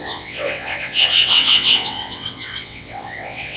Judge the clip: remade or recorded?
remade